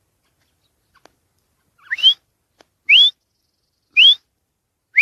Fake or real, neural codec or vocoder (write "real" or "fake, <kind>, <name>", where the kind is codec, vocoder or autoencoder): real